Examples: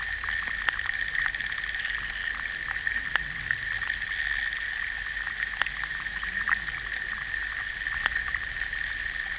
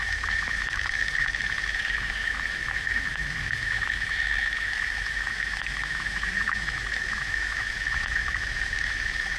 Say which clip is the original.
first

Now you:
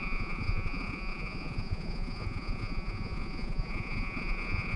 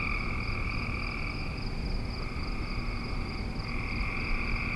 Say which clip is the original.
second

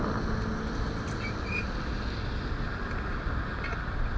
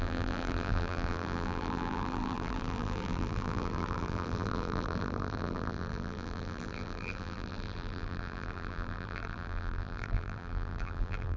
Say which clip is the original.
first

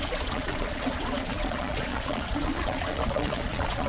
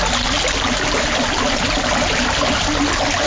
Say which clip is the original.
second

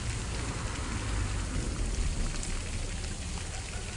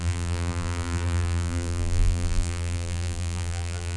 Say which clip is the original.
first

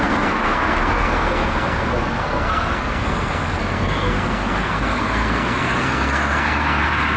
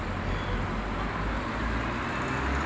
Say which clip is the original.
second